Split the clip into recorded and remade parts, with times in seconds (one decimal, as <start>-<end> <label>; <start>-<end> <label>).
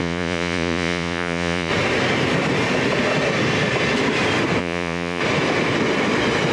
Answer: 0.0-1.7 remade; 1.7-4.6 recorded; 4.6-5.2 remade; 5.2-6.5 recorded